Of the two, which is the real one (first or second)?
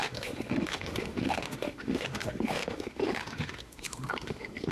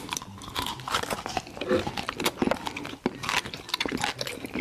second